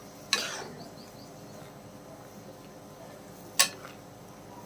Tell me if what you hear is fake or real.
real